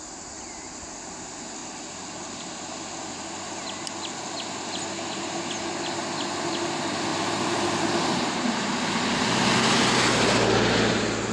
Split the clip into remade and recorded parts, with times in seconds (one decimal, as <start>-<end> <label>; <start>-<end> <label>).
0.0-1.6 recorded; 1.6-2.4 remade; 2.4-7.1 recorded; 7.1-8.8 remade; 8.8-11.3 recorded